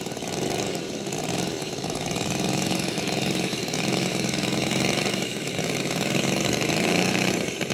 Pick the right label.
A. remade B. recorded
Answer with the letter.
A